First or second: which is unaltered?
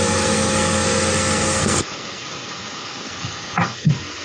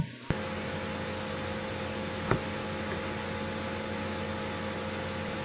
second